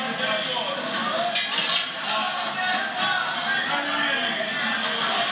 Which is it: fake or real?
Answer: real